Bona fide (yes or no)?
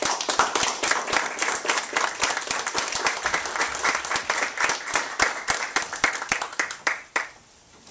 no